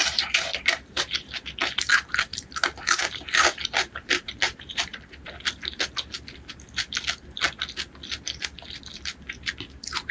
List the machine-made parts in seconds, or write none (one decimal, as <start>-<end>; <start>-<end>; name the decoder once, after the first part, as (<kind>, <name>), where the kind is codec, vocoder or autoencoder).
0.0-1.9 (vocoder, BigVGAN v2); 2.3-5.0